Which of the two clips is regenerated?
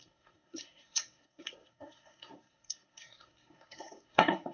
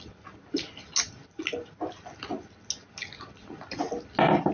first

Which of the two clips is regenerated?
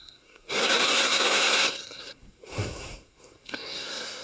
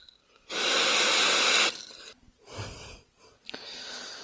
first